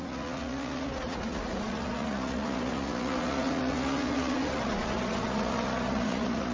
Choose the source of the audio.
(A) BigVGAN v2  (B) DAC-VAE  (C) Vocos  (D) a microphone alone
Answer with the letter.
C